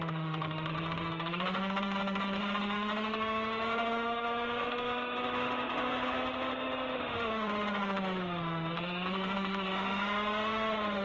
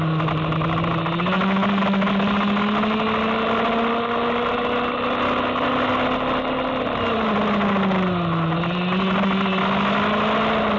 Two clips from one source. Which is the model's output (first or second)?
first